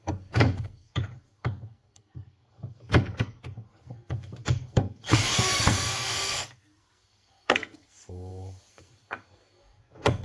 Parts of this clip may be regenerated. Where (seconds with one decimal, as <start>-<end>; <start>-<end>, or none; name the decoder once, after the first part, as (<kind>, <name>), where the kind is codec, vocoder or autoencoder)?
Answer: 0.0-10.2 (codec, SNAC)